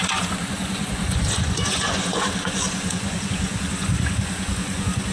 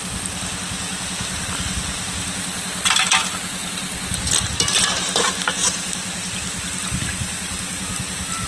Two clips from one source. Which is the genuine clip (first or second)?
second